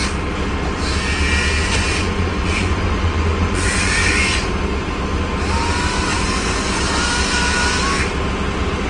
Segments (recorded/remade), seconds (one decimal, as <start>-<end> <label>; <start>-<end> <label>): 0.0-1.6 recorded; 1.6-4.5 remade; 4.5-6.1 recorded; 6.1-6.8 remade; 6.8-8.9 recorded